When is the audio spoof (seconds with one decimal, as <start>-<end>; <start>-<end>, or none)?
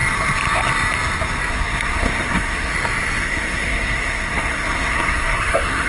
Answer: 1.5-2.7; 3.2-5.9